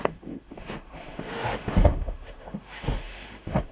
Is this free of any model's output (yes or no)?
no